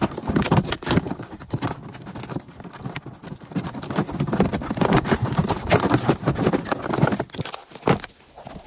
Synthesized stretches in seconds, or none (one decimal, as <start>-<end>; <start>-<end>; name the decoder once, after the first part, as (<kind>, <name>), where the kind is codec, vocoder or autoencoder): none